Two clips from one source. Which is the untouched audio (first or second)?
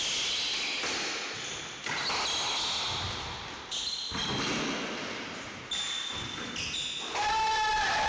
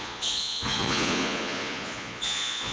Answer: first